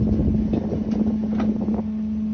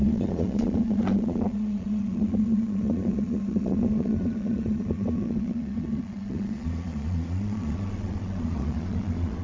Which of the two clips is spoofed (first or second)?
second